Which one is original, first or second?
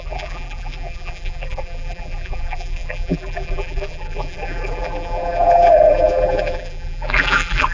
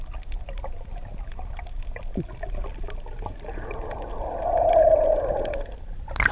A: second